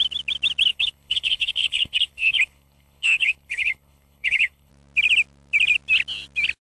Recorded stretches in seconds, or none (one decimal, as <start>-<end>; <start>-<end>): 0.0-0.7; 4.7-6.6